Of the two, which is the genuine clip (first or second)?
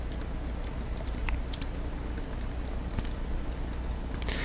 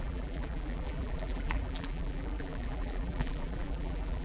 first